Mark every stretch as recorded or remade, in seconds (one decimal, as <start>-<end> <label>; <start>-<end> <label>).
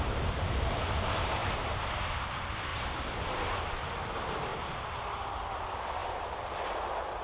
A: 0.0-1.4 recorded; 1.4-2.1 remade; 2.1-2.7 recorded; 2.7-3.3 remade; 3.3-6.0 recorded; 6.0-6.7 remade; 6.7-7.2 recorded